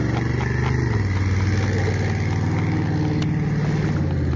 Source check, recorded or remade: recorded